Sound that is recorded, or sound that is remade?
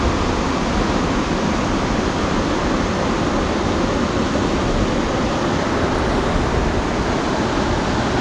recorded